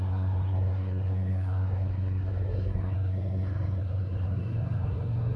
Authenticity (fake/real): fake